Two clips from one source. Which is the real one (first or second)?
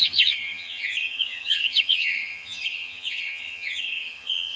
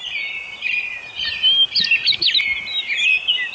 second